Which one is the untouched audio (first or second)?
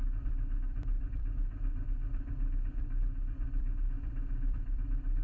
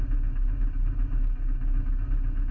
second